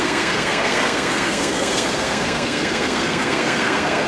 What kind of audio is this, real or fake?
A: fake